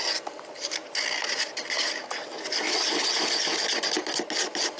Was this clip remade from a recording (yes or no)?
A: no